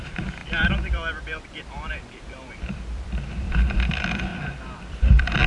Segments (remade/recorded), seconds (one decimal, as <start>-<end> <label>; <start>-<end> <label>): 0.0-4.3 remade; 4.3-4.8 recorded; 4.8-5.5 remade